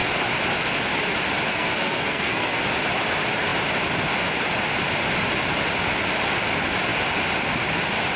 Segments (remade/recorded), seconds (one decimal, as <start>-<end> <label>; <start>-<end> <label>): 0.0-1.5 recorded; 1.5-2.6 remade; 2.6-8.2 recorded